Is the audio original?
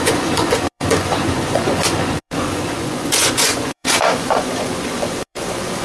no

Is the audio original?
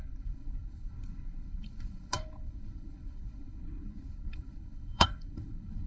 no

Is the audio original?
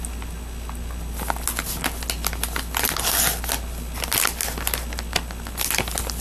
yes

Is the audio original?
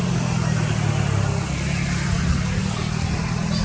yes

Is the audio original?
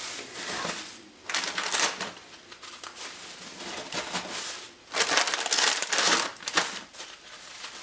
yes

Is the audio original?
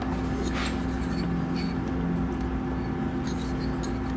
yes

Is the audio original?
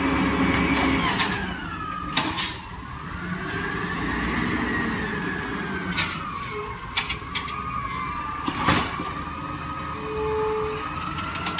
yes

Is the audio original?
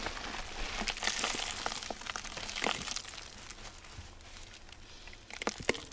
yes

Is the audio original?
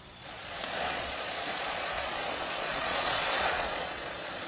no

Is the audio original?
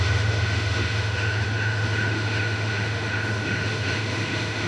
no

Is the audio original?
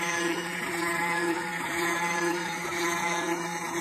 no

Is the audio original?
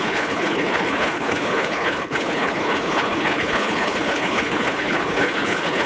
no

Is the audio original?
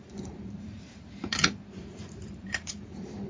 no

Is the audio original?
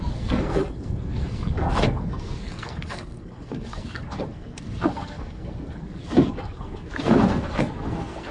no